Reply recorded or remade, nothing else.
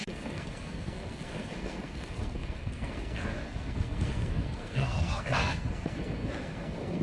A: remade